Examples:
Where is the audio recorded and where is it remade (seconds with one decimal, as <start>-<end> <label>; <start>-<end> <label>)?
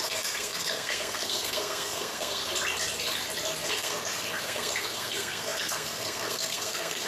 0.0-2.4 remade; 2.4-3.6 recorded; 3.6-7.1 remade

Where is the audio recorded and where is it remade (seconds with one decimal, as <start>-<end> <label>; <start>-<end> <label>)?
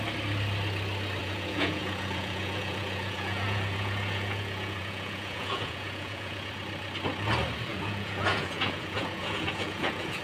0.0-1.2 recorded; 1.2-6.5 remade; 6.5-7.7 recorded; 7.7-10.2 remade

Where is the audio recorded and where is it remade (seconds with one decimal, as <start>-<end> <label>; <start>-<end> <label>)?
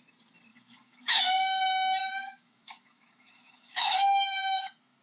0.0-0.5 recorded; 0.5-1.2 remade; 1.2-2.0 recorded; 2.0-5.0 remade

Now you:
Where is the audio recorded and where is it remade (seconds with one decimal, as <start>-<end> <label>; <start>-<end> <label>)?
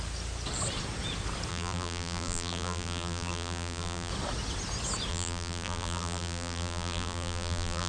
0.0-1.5 recorded; 1.5-4.1 remade; 4.1-5.1 recorded; 5.1-7.9 remade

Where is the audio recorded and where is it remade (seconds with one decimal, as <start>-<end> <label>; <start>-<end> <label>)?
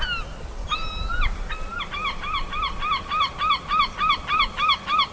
0.0-5.1 recorded